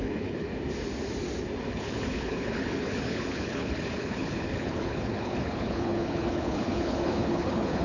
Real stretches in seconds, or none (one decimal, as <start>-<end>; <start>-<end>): 0.5-1.7